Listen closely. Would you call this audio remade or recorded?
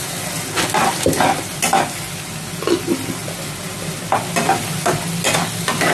recorded